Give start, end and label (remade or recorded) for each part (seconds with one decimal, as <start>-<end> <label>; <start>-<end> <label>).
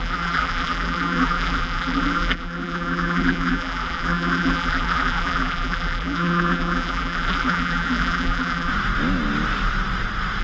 0.0-8.7 remade; 8.7-10.4 recorded